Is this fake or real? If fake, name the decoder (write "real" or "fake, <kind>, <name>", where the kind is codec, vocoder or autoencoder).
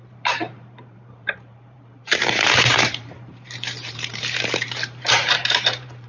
fake, vocoder, BigVGAN v2